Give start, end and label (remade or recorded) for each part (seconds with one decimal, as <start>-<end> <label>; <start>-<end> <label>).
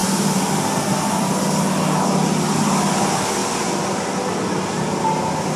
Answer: 0.0-0.5 remade; 0.5-3.4 recorded; 3.4-4.3 remade; 4.3-5.6 recorded